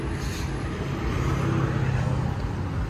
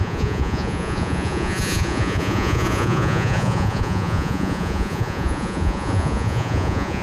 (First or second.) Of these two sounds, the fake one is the second